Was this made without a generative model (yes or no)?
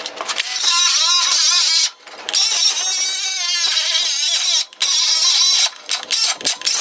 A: yes